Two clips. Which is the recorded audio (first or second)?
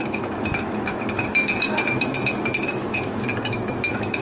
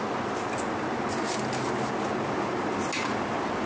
second